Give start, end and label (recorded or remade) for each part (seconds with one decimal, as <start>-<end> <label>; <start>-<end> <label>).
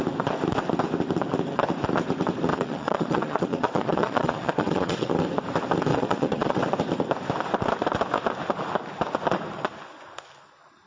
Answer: 0.0-2.5 recorded; 2.5-5.1 remade; 5.1-5.9 recorded; 5.9-6.6 remade; 6.6-10.9 recorded